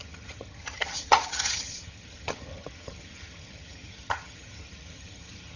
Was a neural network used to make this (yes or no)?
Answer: yes